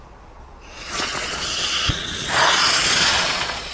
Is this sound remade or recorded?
remade